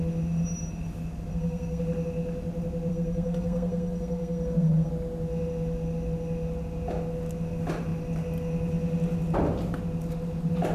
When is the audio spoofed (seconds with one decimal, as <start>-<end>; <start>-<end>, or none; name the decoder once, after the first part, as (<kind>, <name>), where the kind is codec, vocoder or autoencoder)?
1.3-1.8 (codec, SNAC); 2.9-4.9